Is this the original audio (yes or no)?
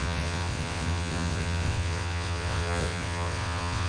no